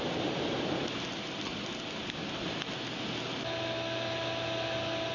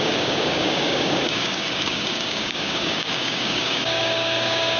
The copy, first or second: second